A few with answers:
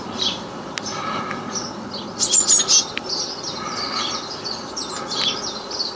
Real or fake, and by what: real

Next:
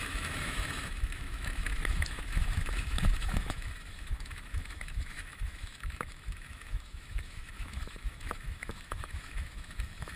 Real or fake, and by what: fake, autoencoder, DAC-VAE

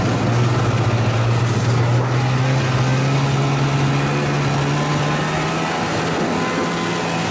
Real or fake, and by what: real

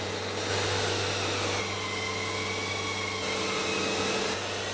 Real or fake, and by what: real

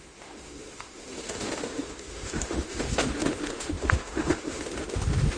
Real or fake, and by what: fake, autoencoder, DAC-VAE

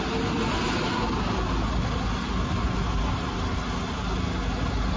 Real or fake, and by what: real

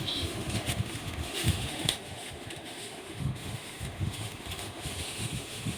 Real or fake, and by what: fake, autoencoder, DAC-VAE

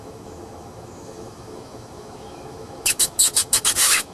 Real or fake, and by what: fake, autoencoder, DAC-VAE